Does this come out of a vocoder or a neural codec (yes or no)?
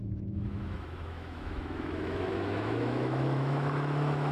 yes